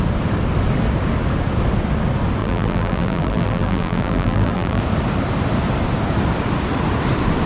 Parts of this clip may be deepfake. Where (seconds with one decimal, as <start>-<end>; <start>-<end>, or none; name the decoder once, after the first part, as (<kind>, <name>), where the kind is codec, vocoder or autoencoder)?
2.4-4.8 (vocoder, BigVGAN v2)